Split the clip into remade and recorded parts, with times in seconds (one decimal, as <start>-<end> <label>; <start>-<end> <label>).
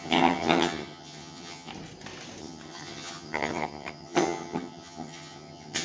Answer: 0.0-1.7 remade; 1.7-2.4 recorded; 2.4-5.8 remade